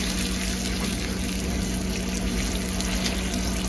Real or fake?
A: real